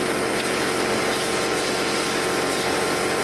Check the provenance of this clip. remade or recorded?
recorded